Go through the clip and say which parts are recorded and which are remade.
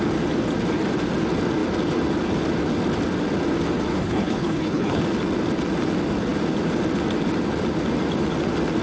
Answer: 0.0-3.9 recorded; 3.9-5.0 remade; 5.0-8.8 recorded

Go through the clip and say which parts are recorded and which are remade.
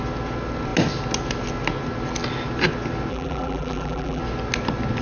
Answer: 0.0-3.1 recorded; 3.1-4.2 remade; 4.2-5.0 recorded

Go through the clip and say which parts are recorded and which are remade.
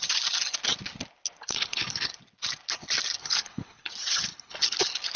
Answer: 0.0-1.5 recorded; 1.5-2.1 remade; 2.1-3.2 recorded; 3.2-3.9 remade; 3.9-4.3 recorded; 4.3-4.8 remade; 4.8-5.2 recorded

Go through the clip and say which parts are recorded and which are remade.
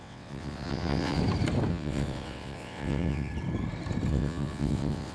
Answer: 0.0-1.2 remade; 1.2-1.7 recorded; 1.7-3.3 remade; 3.3-4.1 recorded; 4.1-5.1 remade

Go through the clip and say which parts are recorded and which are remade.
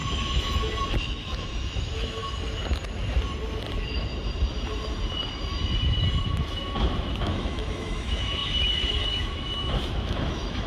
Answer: 0.0-2.2 remade; 2.2-6.2 recorded; 6.2-10.7 remade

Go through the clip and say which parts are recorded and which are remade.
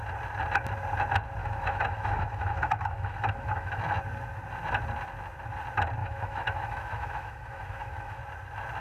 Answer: 0.0-1.4 recorded; 1.4-3.8 remade; 3.8-6.0 recorded; 6.0-8.2 remade; 8.2-8.8 recorded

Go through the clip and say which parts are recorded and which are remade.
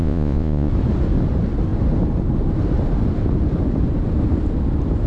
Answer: 0.0-0.7 remade; 0.7-5.1 recorded